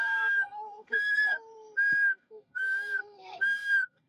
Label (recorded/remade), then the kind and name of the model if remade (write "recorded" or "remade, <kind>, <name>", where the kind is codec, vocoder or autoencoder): remade, codec, SNAC